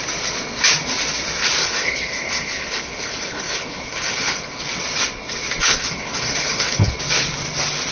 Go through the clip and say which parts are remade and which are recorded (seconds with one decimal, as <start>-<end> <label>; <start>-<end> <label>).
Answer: 0.0-1.6 recorded; 1.6-4.6 remade; 4.6-5.6 recorded; 5.6-6.9 remade; 6.9-7.9 recorded